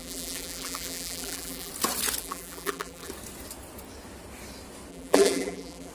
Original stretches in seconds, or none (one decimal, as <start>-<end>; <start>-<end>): 1.7-2.2; 3.1-4.9